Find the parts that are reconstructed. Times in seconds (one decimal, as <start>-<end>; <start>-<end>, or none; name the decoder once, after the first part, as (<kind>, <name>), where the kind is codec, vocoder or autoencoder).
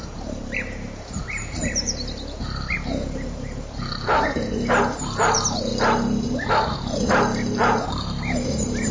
0.0-5.7 (vocoder, BigVGAN v2); 6.5-8.9